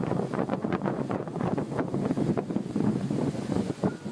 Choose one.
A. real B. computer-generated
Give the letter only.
B